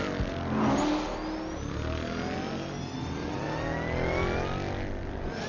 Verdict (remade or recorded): recorded